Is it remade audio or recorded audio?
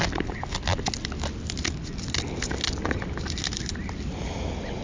recorded